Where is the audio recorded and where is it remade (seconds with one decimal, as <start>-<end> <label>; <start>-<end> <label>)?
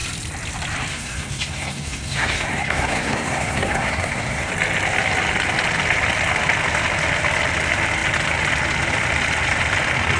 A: 0.0-0.9 recorded; 0.9-4.5 remade; 4.5-10.2 recorded